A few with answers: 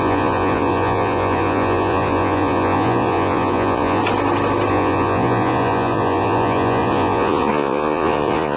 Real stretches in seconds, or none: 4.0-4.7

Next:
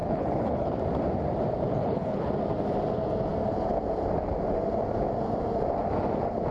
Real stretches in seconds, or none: 0.7-1.7; 2.3-6.5

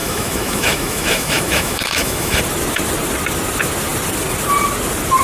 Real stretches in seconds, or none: 2.4-5.2

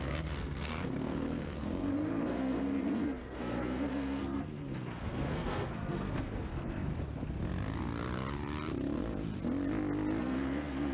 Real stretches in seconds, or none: 6.9-10.2

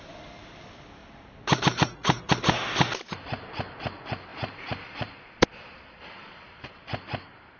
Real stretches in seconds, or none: 0.0-1.0; 2.3-4.3; 5.2-6.2; 6.8-7.6

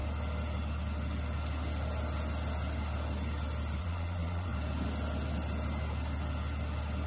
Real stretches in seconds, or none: 0.0-3.8; 4.5-7.1

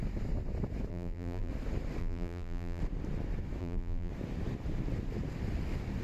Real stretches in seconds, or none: 0.0-0.9; 1.5-2.0; 2.8-3.6; 4.1-6.0

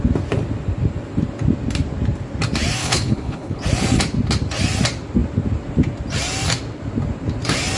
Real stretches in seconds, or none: 0.0-2.8; 3.6-7.8